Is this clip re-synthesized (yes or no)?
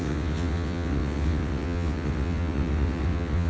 yes